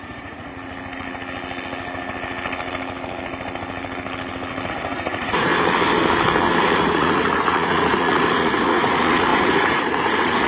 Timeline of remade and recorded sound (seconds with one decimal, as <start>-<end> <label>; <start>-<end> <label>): 0.0-0.5 remade; 0.5-4.7 recorded; 4.7-5.5 remade; 5.5-6.6 recorded; 6.6-10.5 remade